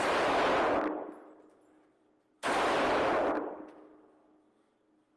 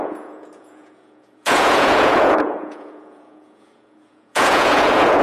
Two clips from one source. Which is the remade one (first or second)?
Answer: second